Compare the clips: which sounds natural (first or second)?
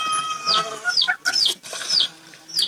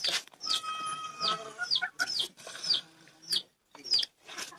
first